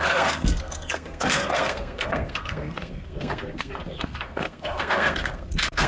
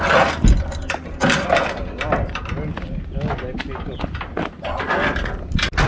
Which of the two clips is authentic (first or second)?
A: second